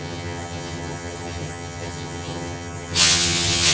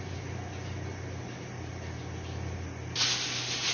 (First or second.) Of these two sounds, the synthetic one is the first